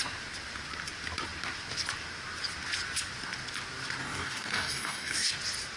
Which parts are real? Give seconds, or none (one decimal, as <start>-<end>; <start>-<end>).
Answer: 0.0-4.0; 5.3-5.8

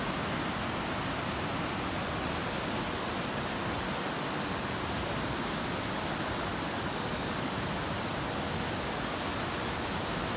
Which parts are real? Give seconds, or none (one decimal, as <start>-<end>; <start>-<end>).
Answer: 0.0-6.5; 7.5-10.4

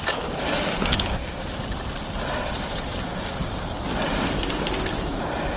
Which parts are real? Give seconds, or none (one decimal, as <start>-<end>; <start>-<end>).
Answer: 0.0-5.6

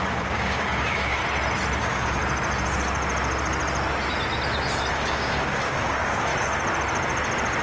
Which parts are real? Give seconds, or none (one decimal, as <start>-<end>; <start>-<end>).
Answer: 1.2-1.8; 2.2-4.9; 6.3-7.6